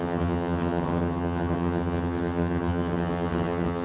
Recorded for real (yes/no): no